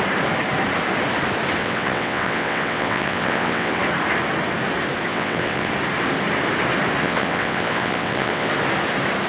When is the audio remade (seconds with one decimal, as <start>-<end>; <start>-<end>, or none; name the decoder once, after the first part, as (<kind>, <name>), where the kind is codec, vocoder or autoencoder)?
1.6-3.8 (vocoder, WaveNeXt); 5.1-5.7; 7.0-8.5